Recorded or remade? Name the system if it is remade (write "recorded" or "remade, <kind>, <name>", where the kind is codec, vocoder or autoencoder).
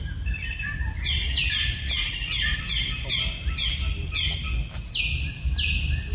recorded